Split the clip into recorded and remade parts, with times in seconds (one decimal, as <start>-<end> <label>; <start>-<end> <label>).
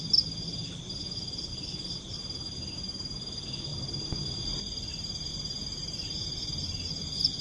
0.0-3.7 recorded; 3.7-5.3 remade; 5.3-7.4 recorded